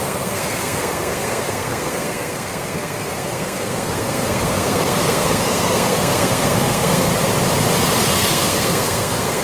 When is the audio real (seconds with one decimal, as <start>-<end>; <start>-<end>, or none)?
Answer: 7.1-8.0